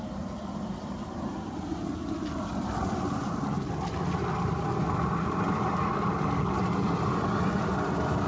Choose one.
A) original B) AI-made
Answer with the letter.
A